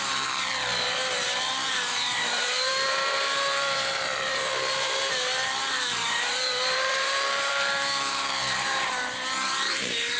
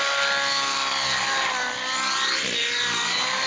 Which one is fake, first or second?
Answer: first